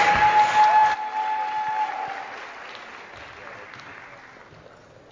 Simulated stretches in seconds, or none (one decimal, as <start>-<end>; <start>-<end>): none